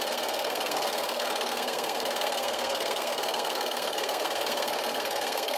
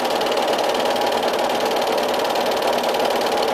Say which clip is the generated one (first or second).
first